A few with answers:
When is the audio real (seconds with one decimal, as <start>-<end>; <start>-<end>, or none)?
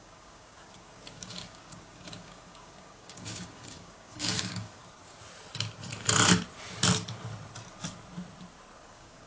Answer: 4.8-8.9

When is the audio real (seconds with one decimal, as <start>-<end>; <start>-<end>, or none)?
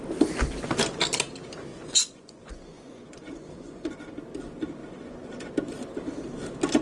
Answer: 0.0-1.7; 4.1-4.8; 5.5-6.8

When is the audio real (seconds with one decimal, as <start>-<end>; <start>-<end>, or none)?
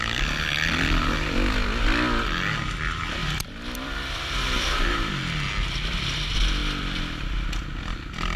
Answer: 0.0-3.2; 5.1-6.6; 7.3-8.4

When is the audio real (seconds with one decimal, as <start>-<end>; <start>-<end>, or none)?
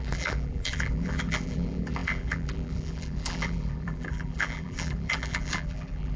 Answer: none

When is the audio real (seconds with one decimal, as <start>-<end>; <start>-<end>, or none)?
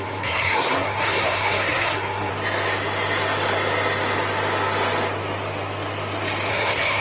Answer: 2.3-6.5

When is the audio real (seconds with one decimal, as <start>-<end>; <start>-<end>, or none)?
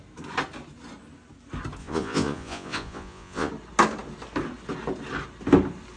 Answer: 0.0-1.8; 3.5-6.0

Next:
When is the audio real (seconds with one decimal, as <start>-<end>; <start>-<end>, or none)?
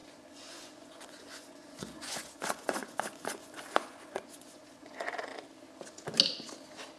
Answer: 5.3-7.0